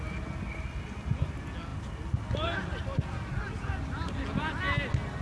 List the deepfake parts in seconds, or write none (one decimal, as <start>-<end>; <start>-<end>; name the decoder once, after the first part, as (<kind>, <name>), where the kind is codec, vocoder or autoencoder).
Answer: none